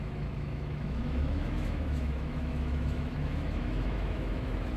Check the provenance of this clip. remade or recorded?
remade